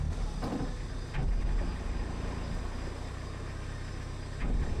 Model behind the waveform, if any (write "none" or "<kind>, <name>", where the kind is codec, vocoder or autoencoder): none